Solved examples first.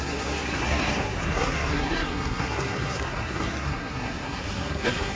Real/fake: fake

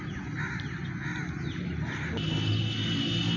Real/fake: real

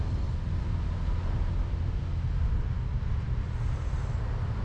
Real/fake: real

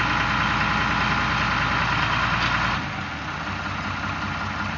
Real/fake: real